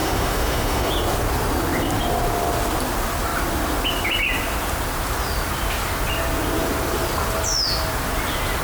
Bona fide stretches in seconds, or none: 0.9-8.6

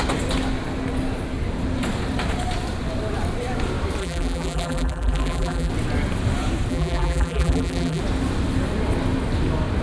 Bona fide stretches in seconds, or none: 0.0-4.0; 5.7-6.7; 8.0-9.8

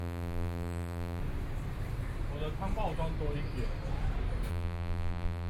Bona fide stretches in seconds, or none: 1.2-4.5

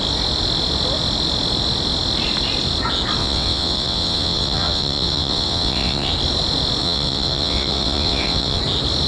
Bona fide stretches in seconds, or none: 0.0-3.2; 6.1-6.8; 8.6-9.1

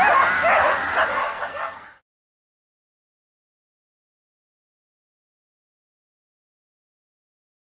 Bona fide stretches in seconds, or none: 0.0-1.1; 3.5-7.8

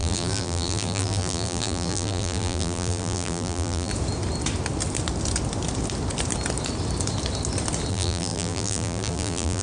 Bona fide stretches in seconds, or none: 3.9-7.9